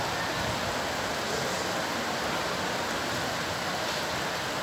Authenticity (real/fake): real